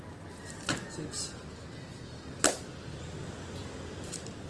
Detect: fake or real real